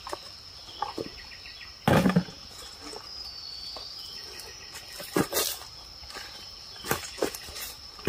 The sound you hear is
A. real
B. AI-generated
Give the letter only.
A